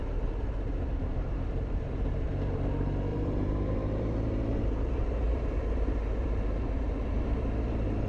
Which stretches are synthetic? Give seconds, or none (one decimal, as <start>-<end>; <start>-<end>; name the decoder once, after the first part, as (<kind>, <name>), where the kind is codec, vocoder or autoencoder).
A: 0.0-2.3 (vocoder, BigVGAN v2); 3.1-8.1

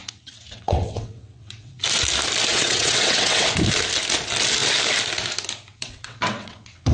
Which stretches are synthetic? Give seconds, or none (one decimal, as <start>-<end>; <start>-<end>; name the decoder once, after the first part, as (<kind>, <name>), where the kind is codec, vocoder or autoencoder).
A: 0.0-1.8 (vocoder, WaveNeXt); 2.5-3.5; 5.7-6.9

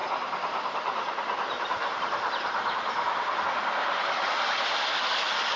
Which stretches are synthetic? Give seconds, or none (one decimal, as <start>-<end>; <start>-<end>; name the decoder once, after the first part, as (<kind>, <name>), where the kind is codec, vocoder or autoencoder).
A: 0.0-3.4 (vocoder, BigVGAN v2)

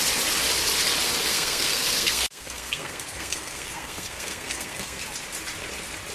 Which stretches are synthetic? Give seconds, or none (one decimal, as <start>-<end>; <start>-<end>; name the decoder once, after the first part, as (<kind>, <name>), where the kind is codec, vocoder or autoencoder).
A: 1.3-5.0 (codec, SNAC)

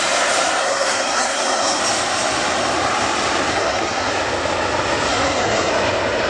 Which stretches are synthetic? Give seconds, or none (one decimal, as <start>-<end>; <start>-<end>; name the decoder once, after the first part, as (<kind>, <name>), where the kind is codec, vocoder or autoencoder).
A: 0.6-1.8 (codec, SNAC); 3.5-4.1; 5.1-5.7